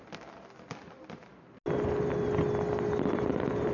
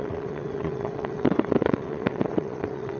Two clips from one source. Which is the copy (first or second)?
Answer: second